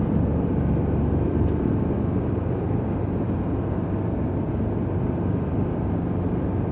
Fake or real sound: fake